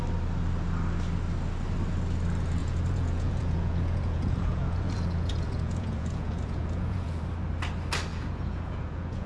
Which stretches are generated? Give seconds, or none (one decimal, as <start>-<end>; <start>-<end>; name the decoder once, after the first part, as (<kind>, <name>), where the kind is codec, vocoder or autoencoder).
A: 2.6-7.2 (vocoder, Vocos); 8.1-9.3